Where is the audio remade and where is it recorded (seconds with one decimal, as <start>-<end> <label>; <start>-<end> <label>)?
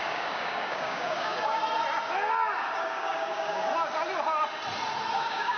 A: 0.0-1.6 remade; 1.6-2.8 recorded; 2.8-3.7 remade; 3.7-5.1 recorded; 5.1-5.6 remade